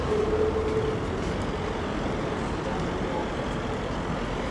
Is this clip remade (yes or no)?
no